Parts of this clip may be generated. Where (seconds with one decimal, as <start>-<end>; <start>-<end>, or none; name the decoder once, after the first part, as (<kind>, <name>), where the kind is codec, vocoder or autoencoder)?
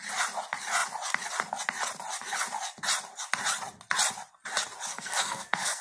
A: 4.9-5.8 (codec, SNAC)